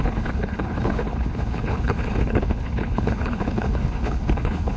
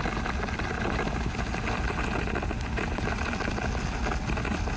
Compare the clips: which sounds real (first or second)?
second